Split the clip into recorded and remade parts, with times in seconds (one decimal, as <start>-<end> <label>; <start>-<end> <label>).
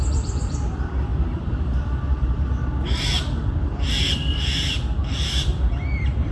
0.0-6.3 remade